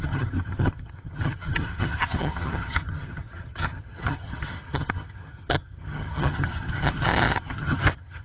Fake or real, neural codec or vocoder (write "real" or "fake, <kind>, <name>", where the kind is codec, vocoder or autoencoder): fake, vocoder, HiFi-GAN